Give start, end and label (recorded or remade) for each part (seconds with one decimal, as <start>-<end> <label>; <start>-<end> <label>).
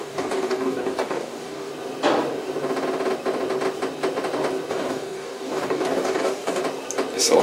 0.0-1.7 remade; 1.7-4.7 recorded; 4.7-6.6 remade; 6.6-7.4 recorded